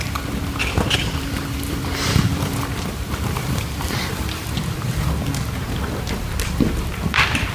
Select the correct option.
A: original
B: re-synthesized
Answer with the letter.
B